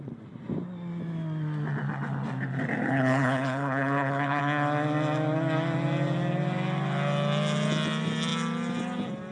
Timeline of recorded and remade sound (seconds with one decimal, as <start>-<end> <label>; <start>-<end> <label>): 0.0-2.8 recorded; 2.8-4.4 remade; 4.4-9.3 recorded